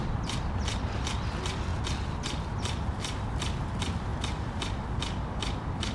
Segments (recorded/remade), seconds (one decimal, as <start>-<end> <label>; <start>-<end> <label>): 0.0-4.1 recorded; 4.1-4.6 remade; 4.6-5.9 recorded